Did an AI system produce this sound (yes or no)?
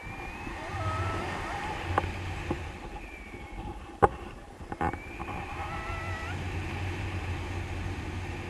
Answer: no